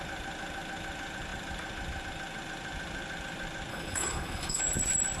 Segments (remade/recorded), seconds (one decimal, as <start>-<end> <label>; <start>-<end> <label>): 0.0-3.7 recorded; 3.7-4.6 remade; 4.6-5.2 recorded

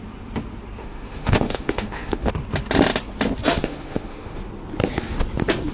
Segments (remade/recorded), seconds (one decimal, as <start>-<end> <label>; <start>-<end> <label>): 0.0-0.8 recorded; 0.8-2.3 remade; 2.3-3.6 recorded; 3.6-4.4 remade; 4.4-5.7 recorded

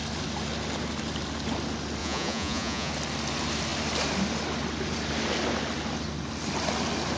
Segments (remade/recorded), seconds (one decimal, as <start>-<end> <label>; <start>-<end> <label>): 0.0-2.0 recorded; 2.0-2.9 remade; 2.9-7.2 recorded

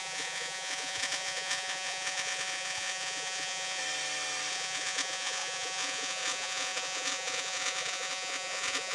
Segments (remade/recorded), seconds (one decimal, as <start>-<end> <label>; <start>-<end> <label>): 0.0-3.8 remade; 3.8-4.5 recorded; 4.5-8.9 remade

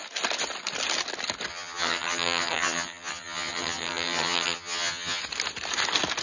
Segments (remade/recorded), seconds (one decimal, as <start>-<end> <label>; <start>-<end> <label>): 0.0-1.5 recorded; 1.5-5.2 remade; 5.2-6.2 recorded

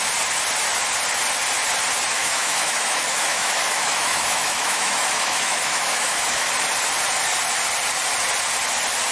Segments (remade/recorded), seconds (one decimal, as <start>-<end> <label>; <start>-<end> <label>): 0.0-2.1 recorded; 2.1-6.5 remade; 6.5-9.1 recorded